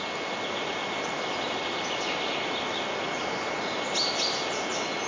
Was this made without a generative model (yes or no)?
yes